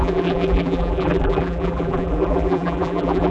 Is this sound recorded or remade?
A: remade